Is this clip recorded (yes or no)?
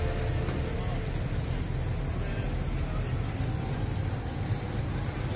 yes